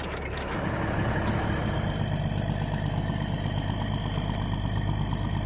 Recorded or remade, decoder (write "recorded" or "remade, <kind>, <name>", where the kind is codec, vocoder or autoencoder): recorded